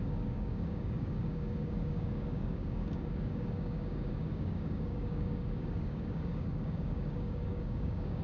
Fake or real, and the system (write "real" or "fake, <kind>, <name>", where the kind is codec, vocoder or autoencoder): fake, codec, DAC